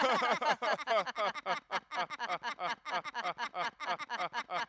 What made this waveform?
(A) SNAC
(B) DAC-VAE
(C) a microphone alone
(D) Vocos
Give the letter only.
C